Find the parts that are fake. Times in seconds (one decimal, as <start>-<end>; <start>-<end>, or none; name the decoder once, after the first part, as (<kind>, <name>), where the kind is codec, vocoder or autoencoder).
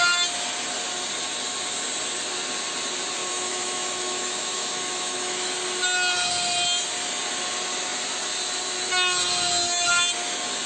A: 3.2-5.5 (autoencoder, DAC-VAE)